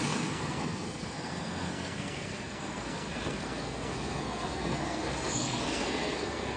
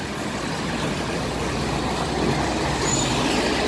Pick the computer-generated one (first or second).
first